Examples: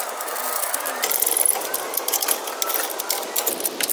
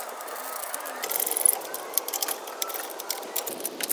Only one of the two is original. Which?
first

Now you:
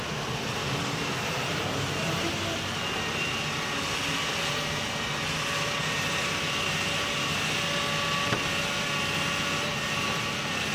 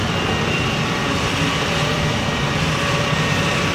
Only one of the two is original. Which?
first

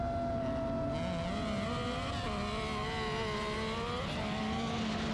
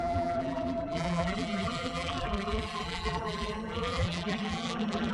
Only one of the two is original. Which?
first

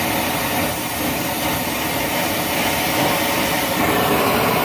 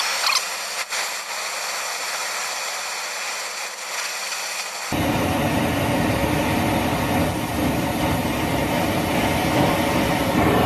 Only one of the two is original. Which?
second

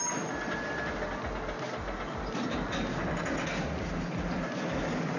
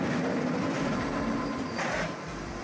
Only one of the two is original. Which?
first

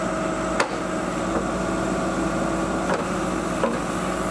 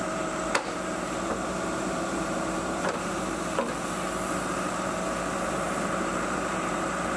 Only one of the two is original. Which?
first